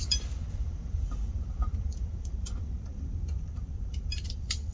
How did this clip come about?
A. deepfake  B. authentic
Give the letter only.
A